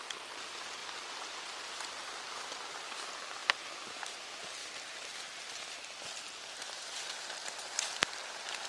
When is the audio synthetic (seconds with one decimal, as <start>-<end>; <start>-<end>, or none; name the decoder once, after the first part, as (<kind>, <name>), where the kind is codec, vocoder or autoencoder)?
none